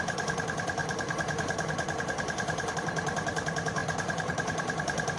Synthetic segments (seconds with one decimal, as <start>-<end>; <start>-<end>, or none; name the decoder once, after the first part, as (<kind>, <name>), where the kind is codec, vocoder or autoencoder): 0.0-5.2 (vocoder, BigVGAN v2)